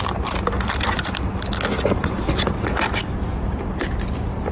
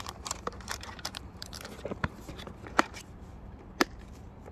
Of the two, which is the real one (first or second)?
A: first